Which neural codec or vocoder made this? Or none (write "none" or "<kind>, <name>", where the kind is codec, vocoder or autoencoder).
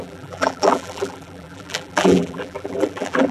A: vocoder, BigVGAN v2